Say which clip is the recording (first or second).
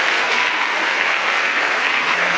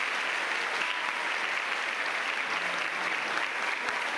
second